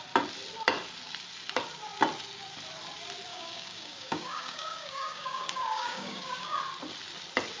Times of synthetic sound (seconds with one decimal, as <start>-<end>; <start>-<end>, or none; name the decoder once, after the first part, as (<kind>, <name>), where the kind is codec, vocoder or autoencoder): 3.3-6.6 (codec, DAC)